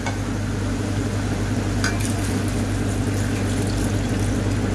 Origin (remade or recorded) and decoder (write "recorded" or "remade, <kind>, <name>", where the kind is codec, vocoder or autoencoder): recorded